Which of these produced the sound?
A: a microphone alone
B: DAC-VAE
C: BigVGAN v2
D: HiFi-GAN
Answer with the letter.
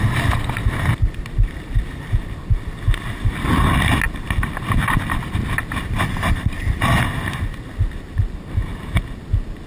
A